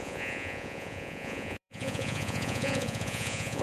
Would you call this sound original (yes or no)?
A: no